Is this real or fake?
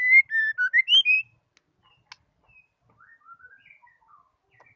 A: real